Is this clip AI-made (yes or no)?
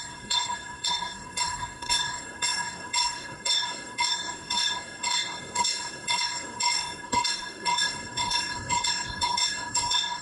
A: yes